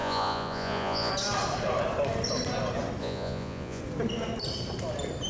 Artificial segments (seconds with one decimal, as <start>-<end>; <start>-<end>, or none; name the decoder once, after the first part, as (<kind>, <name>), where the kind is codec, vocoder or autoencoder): 0.0-1.1 (vocoder, Vocos); 3.0-3.8